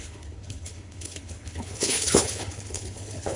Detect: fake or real fake